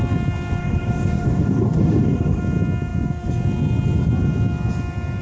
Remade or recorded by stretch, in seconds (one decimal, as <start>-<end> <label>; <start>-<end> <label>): 0.0-0.6 recorded; 0.6-2.4 remade; 2.4-5.2 recorded